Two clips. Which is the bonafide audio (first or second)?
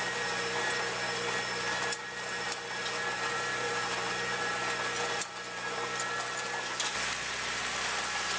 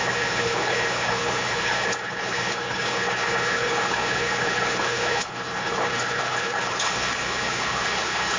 first